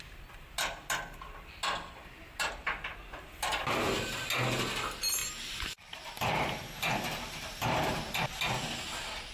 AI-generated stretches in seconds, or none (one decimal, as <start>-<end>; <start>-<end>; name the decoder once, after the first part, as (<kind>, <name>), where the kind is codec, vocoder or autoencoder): 5.2-8.3 (vocoder, BigVGAN v2)